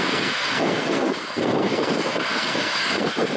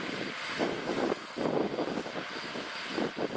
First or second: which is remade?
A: first